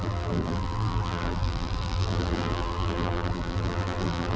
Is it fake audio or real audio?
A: fake